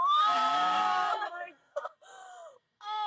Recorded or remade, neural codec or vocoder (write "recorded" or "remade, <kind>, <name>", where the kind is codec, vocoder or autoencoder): remade, codec, SNAC